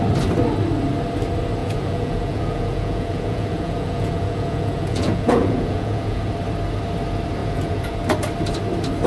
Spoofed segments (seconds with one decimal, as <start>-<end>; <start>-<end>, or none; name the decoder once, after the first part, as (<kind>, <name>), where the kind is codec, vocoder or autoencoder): 1.6-6.3 (vocoder, Vocos); 7.4-8.0